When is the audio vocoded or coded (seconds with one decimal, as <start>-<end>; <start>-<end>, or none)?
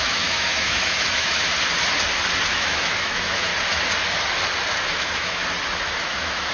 0.0-1.5; 2.5-3.5; 4.9-5.4; 6.0-6.5